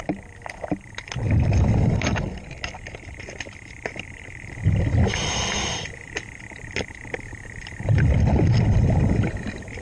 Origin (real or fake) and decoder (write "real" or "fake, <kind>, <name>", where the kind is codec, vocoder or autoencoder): real